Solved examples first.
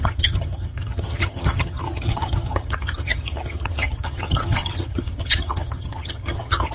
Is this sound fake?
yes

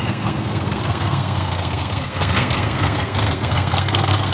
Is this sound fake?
yes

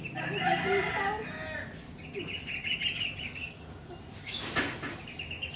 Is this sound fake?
no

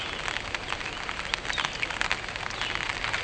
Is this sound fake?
no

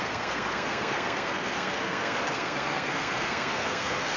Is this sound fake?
yes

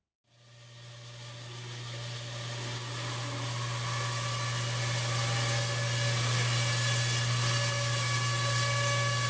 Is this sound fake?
no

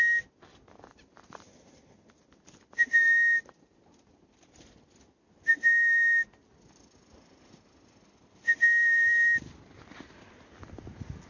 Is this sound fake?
no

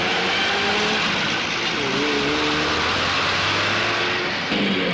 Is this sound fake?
no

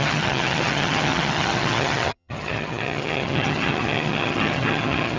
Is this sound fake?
yes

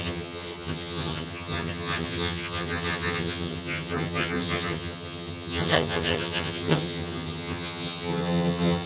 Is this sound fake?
yes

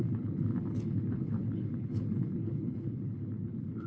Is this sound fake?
yes